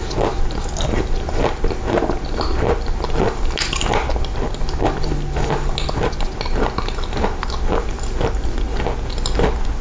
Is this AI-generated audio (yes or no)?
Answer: no